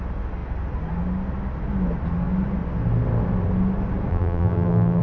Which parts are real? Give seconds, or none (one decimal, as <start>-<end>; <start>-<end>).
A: 0.0-4.1